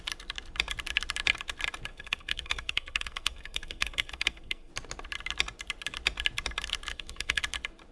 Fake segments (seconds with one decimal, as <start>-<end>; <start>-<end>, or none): 1.9-4.7; 6.9-7.4